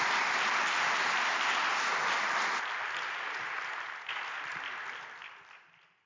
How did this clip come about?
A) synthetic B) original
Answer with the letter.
B